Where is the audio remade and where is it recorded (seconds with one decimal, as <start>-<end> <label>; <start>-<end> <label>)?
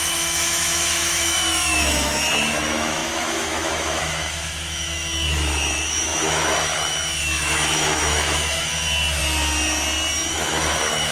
0.0-9.2 remade; 9.2-10.3 recorded; 10.3-11.1 remade